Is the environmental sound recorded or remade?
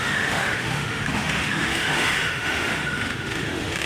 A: remade